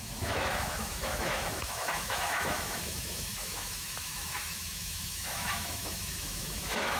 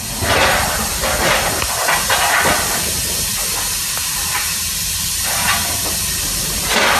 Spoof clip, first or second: first